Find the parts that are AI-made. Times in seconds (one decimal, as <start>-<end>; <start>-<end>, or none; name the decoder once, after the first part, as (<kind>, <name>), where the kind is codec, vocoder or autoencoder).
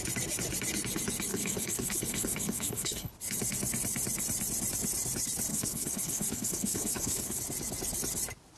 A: 1.3-3.1 (codec, HILCodec); 5.5-7.4